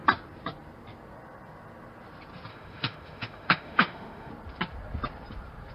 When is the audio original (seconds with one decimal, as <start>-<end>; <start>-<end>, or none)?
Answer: 0.0-2.5; 4.3-5.7